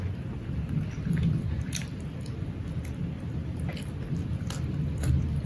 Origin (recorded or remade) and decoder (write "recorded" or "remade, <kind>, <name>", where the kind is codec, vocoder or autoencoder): remade, vocoder, BigVGAN v2